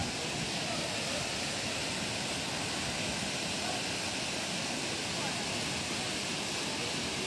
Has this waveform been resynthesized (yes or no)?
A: no